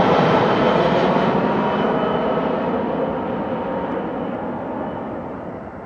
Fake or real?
real